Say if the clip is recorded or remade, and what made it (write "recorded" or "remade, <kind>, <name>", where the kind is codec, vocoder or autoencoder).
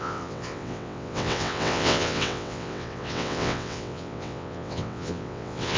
remade, vocoder, WaveNeXt